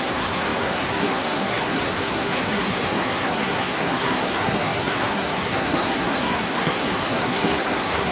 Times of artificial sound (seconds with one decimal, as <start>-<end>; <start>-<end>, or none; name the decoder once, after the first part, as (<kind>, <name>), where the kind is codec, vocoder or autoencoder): 0.0-8.1 (codec, SNAC)